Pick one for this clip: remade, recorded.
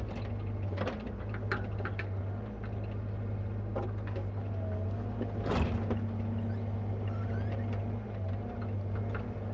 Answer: recorded